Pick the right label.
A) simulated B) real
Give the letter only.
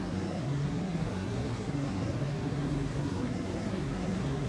A